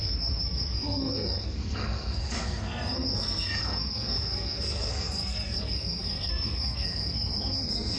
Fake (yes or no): yes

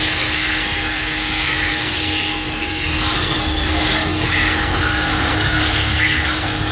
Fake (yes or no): yes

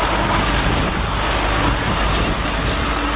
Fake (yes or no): no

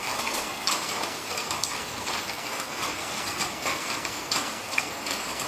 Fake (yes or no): yes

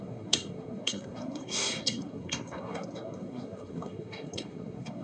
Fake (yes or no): yes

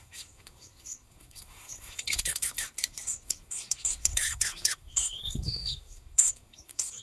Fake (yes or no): yes